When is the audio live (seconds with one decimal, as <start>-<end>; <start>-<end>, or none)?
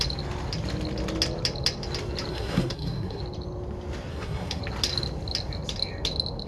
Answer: 0.0-2.3; 3.2-4.1; 4.6-6.5